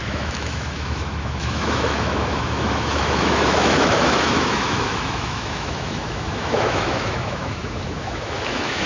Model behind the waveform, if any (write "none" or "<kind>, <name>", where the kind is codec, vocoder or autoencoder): autoencoder, DAC-VAE